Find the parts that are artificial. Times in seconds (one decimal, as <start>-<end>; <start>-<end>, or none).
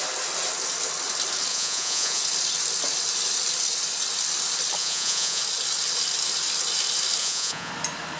1.5-2.2; 4.8-5.4; 7.2-7.7